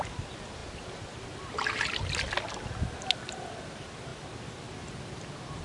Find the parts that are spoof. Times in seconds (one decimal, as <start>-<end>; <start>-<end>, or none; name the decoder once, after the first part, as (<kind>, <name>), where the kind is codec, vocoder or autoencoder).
none